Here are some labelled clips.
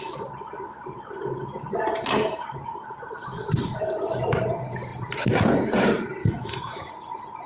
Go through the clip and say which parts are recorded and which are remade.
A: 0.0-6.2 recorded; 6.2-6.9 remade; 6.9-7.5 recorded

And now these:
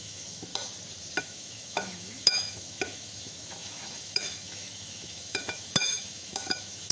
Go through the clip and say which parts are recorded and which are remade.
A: 0.0-0.5 remade; 0.5-1.2 recorded; 1.2-6.9 remade

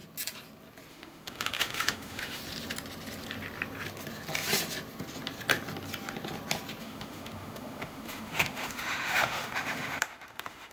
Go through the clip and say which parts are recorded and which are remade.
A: 0.0-0.9 recorded; 0.9-2.4 remade; 2.4-6.8 recorded; 6.8-10.7 remade